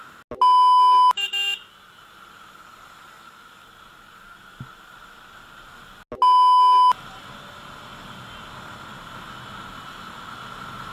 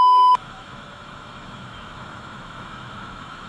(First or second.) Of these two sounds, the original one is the first